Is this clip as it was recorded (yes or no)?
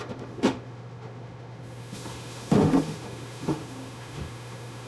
no